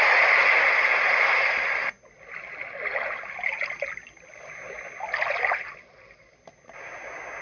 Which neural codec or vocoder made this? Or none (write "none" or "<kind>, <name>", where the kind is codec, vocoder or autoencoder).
none